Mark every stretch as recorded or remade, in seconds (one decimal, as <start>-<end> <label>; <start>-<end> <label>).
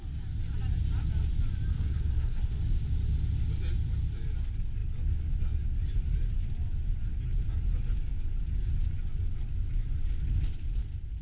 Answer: 0.0-1.7 recorded; 1.7-2.5 remade; 2.5-11.2 recorded